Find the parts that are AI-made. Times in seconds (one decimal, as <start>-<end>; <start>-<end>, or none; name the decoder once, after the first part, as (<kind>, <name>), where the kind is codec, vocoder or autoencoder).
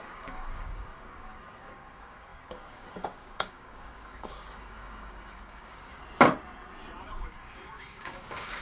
0.0-6.0 (codec, DAC); 7.0-8.6